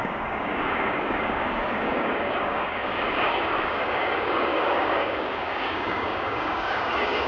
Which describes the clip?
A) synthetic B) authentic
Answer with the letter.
A